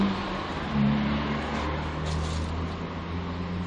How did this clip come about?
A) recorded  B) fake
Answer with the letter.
A